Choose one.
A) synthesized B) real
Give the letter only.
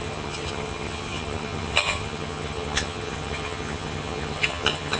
A